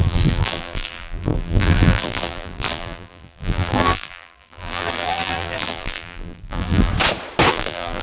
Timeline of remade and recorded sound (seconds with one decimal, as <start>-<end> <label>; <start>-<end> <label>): 0.0-6.9 remade; 6.9-7.5 recorded; 7.5-8.0 remade